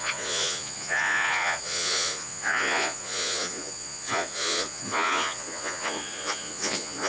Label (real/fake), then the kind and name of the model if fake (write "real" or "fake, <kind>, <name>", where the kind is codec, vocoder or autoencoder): fake, vocoder, Vocos